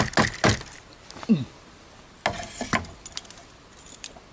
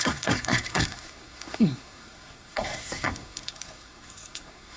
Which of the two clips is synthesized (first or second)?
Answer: second